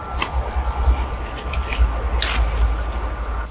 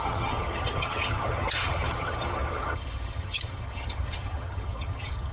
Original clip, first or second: first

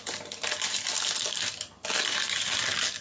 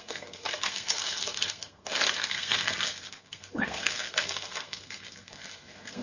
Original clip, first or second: first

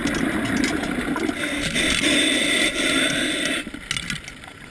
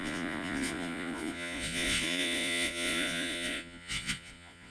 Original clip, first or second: first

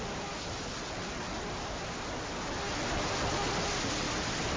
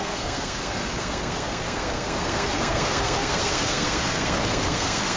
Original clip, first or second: first